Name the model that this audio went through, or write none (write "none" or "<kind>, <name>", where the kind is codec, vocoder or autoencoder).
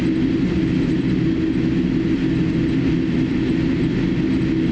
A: none